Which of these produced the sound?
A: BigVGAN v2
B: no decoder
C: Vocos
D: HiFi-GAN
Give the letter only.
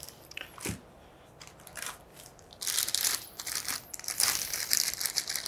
A